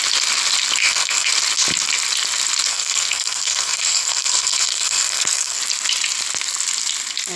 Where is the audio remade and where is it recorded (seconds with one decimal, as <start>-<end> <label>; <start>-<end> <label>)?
0.0-0.8 recorded; 0.8-1.3 remade; 1.3-2.7 recorded; 2.7-5.6 remade; 5.6-7.4 recorded